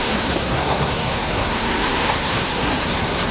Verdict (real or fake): fake